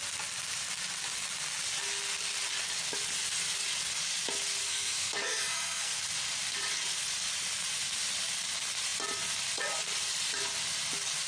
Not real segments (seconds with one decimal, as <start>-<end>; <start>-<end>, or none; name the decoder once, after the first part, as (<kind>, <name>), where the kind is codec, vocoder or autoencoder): 4.6-6.0 (codec, SNAC)